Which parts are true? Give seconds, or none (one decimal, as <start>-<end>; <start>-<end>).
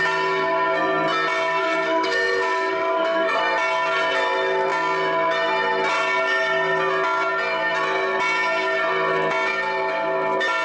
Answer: 0.0-1.5; 3.4-10.6